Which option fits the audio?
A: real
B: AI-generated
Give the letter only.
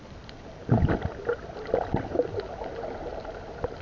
A